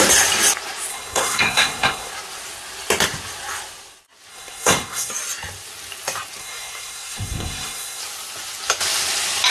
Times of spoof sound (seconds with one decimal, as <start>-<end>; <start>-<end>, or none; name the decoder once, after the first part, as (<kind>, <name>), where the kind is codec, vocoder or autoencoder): 0.9-2.1 (codec, SNAC); 4.3-5.1; 6.4-8.0